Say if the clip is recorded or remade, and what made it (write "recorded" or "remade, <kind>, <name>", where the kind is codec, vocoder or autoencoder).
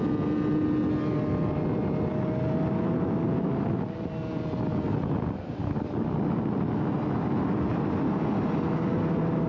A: recorded